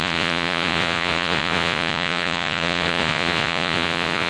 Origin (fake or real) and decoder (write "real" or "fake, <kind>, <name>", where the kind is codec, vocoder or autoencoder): fake, vocoder, Vocos